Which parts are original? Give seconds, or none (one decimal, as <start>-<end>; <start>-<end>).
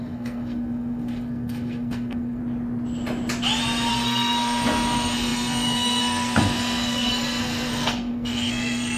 2.4-3.9